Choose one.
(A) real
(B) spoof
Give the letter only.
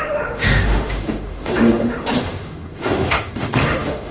B